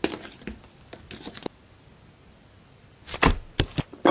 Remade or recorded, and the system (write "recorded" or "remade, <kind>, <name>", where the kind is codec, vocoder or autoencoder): recorded